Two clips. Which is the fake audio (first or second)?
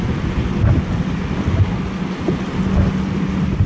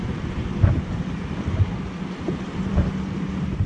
second